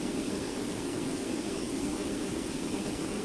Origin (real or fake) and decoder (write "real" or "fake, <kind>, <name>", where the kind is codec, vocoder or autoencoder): fake, codec, SNAC